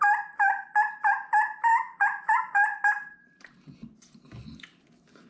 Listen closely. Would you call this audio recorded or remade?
recorded